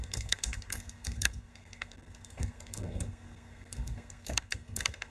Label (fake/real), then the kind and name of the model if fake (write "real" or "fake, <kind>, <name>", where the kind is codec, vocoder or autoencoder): fake, codec, SNAC